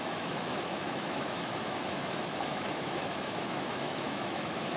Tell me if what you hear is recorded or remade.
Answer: remade